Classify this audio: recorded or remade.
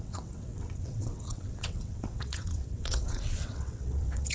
remade